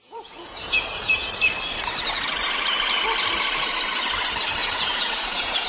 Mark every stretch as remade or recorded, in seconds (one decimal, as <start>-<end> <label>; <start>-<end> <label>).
0.0-1.3 remade; 1.3-4.6 recorded; 4.6-5.7 remade